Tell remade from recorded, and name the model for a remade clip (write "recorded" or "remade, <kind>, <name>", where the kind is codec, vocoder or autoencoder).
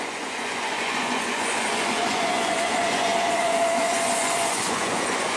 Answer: remade, vocoder, Vocos